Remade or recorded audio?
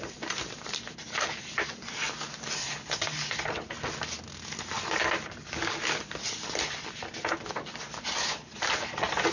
recorded